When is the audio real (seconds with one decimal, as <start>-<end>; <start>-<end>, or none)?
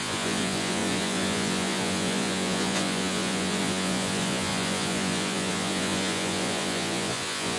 none